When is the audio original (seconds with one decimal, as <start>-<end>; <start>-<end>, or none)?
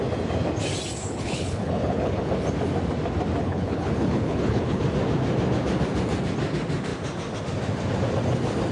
0.0-1.0; 2.3-3.4; 4.8-8.7